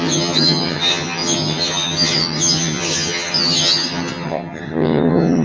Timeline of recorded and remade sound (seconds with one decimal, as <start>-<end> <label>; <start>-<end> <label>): 0.0-5.4 remade